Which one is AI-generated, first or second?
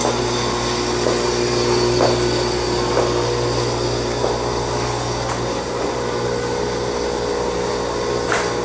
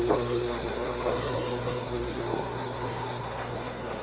second